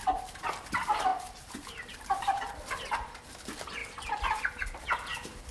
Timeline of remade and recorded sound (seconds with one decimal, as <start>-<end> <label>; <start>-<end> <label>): 0.0-3.8 remade; 3.8-4.4 recorded; 4.4-5.5 remade